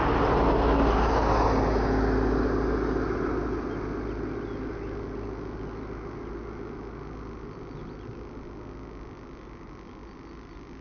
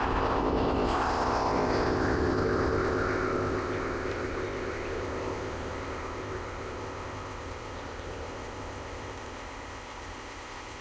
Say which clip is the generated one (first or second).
second